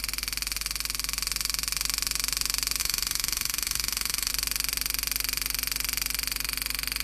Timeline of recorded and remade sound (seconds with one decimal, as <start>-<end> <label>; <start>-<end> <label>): 0.0-2.8 recorded; 2.8-4.3 remade; 4.3-7.0 recorded

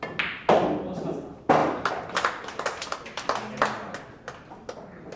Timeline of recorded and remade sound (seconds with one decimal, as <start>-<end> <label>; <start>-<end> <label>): 0.0-5.2 recorded